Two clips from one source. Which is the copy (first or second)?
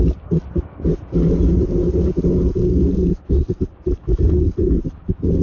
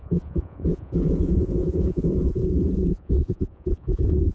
second